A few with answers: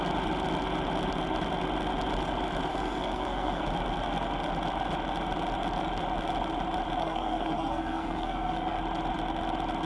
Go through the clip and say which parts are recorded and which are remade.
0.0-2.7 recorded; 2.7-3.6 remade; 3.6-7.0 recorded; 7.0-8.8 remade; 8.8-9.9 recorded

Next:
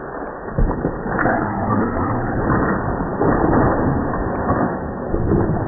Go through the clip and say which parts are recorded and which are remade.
0.0-1.2 recorded; 1.2-2.4 remade; 2.4-5.7 recorded

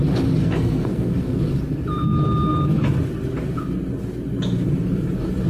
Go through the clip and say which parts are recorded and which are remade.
0.0-0.4 recorded; 0.4-1.4 remade; 1.4-5.5 recorded

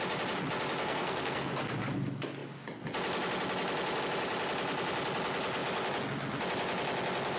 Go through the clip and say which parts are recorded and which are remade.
0.0-0.8 recorded; 0.8-1.5 remade; 1.5-7.4 recorded

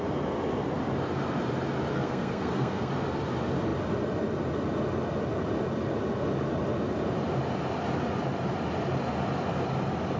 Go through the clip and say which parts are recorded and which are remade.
0.0-1.9 recorded; 1.9-2.9 remade; 2.9-10.2 recorded

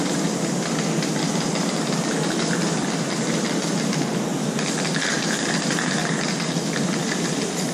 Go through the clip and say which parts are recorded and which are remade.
0.0-7.7 recorded

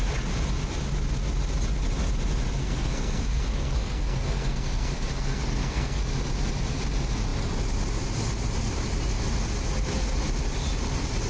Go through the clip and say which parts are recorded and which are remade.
0.0-2.6 recorded; 2.6-6.0 remade; 6.0-11.3 recorded